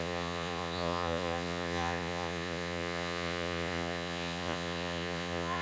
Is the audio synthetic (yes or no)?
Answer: yes